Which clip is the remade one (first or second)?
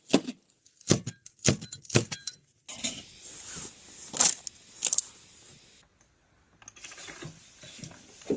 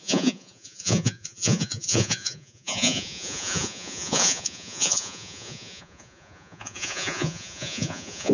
second